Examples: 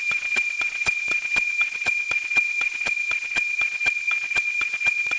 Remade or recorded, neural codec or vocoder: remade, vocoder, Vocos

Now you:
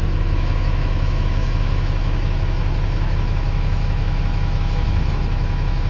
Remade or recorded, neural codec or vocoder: remade, autoencoder, DAC-VAE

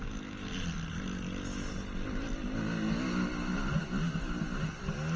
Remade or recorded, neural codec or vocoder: recorded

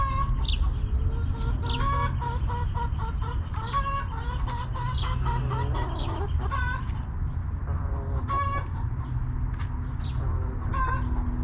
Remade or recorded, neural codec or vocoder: recorded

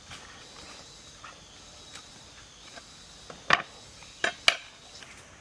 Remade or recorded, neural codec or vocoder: recorded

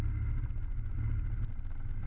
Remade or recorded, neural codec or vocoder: recorded